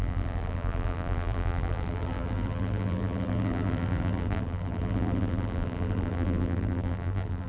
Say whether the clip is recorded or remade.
remade